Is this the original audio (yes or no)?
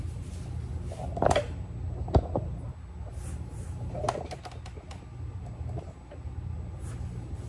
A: yes